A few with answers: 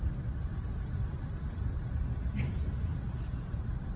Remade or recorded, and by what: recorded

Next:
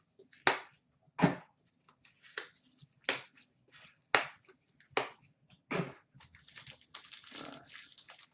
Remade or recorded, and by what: recorded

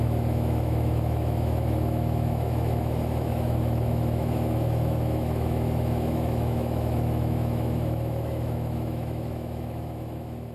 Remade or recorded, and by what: remade, autoencoder, DAC-VAE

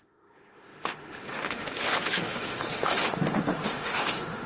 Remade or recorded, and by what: remade, autoencoder, DAC-VAE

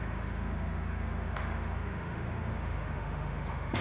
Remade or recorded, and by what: remade, autoencoder, DAC-VAE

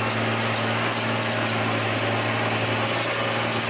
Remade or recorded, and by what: recorded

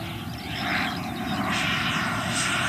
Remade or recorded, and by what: recorded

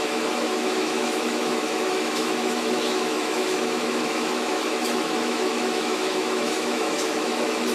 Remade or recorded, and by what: remade, autoencoder, DAC-VAE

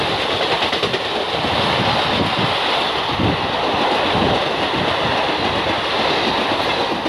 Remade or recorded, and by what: recorded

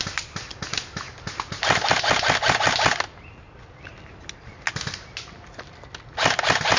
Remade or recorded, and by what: recorded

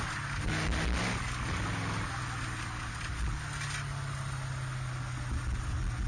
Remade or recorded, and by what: recorded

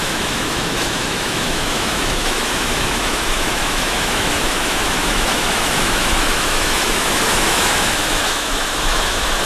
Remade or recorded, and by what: remade, autoencoder, DAC-VAE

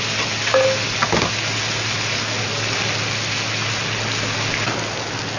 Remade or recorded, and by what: recorded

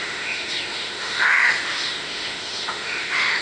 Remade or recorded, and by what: remade, autoencoder, DAC-VAE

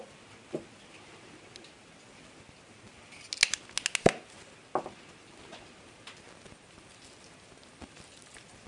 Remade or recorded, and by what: recorded